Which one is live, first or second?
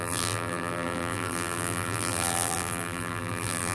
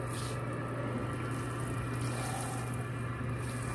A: second